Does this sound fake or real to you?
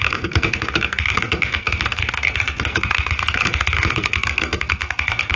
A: fake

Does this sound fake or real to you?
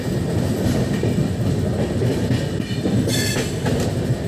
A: real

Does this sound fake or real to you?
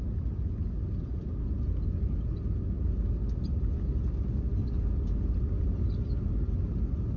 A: real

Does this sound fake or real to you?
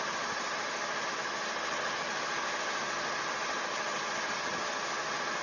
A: real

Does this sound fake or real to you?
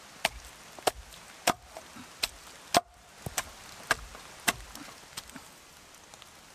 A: real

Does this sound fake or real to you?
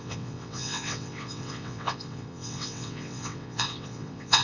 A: fake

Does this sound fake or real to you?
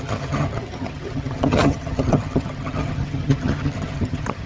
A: fake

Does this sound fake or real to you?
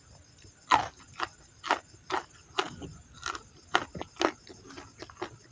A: real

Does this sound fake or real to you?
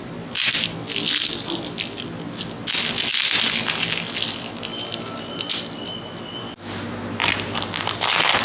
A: real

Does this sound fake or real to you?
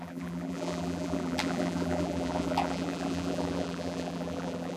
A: fake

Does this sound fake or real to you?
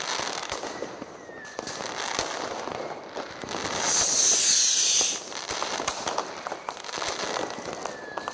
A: real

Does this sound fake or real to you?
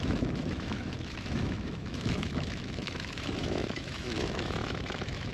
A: fake